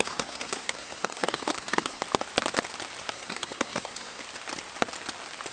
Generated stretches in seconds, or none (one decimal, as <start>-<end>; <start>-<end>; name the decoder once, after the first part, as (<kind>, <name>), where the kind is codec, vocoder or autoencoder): 0.0-2.0 (codec, SNAC); 3.1-4.2